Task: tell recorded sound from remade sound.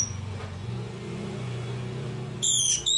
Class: remade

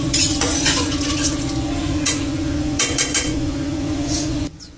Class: remade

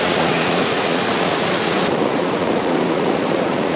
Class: remade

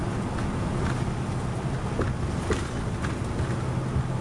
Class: recorded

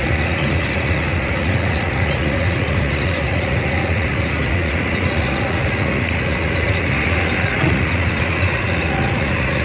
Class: remade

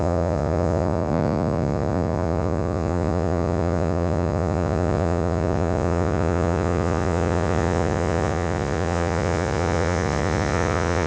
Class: remade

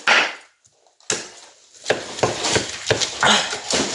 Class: recorded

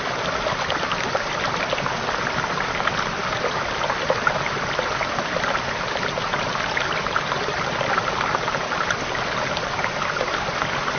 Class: recorded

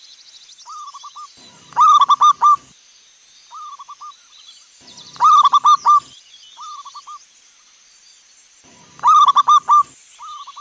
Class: recorded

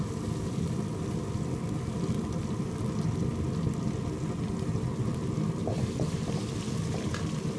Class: recorded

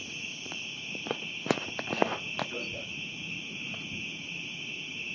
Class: remade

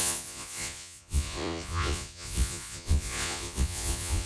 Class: remade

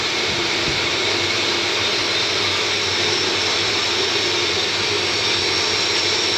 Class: recorded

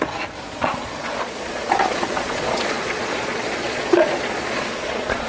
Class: remade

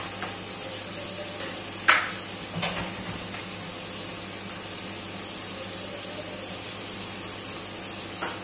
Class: recorded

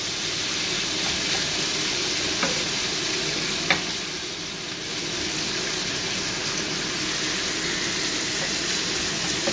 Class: recorded